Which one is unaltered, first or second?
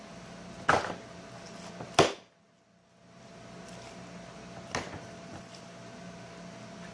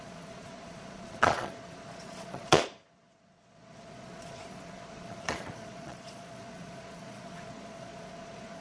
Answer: first